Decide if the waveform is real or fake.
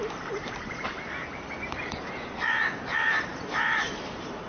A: fake